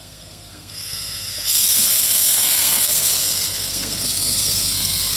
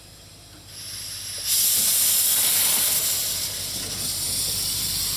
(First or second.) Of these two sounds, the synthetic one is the first